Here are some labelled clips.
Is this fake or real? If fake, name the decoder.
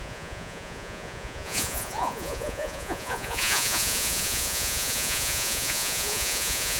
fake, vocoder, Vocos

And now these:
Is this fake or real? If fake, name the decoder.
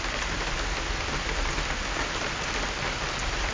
real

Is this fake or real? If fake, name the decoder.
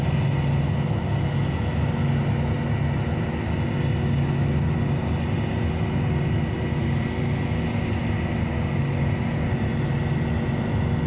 real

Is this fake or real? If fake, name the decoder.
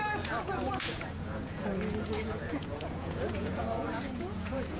fake, vocoder, Vocos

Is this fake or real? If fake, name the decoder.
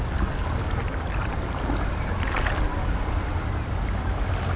real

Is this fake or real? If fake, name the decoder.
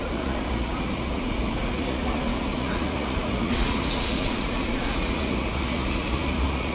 fake, vocoder, Vocos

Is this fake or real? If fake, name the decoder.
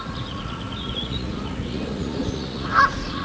fake, vocoder, Vocos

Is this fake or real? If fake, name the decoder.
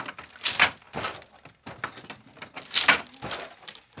real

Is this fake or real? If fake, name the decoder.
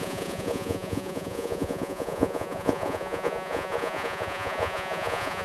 fake, vocoder, Vocos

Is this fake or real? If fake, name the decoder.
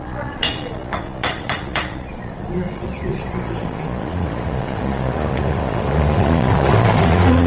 fake, vocoder, Vocos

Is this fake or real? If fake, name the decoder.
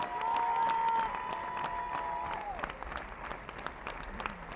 real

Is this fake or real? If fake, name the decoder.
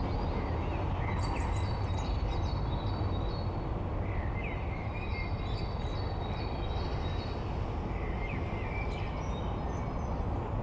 real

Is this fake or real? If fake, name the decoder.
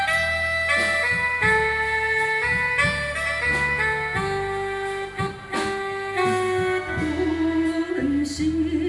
real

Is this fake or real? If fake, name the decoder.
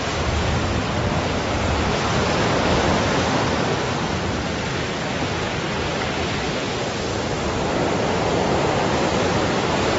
real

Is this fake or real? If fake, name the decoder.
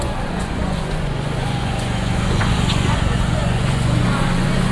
fake, vocoder, Vocos